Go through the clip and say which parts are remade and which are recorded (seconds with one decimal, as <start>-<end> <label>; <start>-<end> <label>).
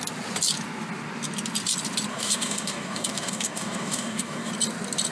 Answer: 0.0-2.1 recorded; 2.1-4.5 remade; 4.5-5.1 recorded